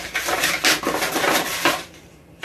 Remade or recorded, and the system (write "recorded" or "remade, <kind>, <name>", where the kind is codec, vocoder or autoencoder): recorded